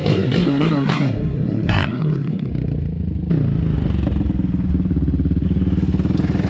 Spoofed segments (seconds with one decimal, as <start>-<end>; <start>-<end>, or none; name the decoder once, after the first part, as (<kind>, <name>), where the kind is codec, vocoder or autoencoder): 0.0-2.5 (codec, SNAC)

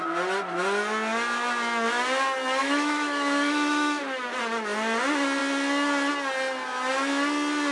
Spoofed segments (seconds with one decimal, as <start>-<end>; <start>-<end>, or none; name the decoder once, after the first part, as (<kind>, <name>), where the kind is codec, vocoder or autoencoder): 2.6-4.0 (autoencoder, DAC-VAE)

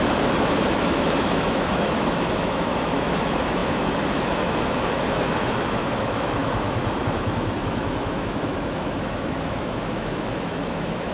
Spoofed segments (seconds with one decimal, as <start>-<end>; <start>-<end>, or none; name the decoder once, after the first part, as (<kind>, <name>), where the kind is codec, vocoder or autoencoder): 0.0-11.1 (autoencoder, DAC-VAE)